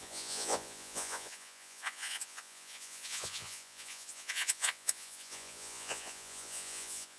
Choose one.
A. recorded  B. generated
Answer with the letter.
B